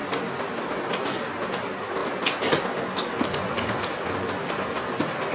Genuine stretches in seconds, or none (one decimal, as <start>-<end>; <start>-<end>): 0.0-5.3